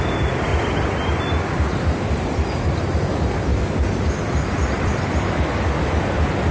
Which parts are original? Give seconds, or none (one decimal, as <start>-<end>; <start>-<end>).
0.0-0.5; 2.1-3.5; 5.4-6.5